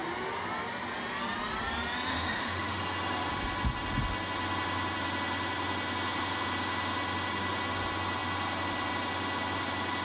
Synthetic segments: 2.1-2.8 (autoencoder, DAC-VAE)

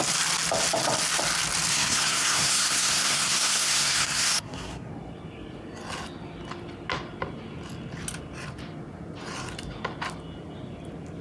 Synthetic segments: 1.7-4.9 (codec, SNAC)

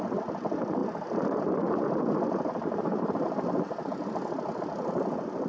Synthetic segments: none

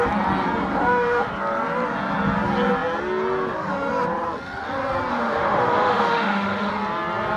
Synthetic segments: 0.8-1.3 (autoencoder, DAC-VAE); 5.1-6.7

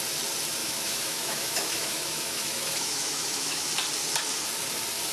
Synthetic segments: 0.6-3.7 (autoencoder, DAC-VAE)